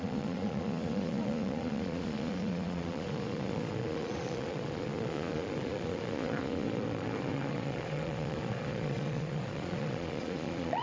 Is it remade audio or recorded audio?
remade